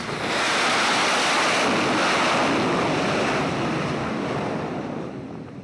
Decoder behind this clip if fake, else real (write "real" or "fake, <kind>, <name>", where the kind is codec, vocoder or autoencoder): real